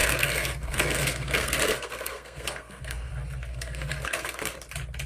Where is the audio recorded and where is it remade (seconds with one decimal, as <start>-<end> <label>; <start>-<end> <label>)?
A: 0.0-3.1 remade; 3.1-3.5 recorded; 3.5-4.6 remade; 4.6-5.1 recorded